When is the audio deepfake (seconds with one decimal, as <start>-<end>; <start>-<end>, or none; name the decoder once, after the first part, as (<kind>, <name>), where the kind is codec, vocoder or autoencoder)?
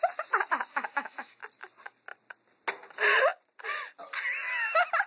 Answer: 0.7-1.4 (autoencoder, DAC-VAE)